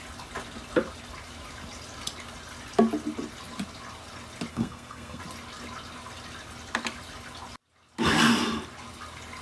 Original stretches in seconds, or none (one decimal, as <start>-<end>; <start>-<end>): 0.0-4.5; 5.2-9.4